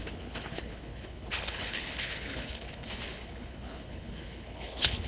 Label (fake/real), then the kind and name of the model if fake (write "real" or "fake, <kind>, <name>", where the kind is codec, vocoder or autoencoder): fake, codec, HILCodec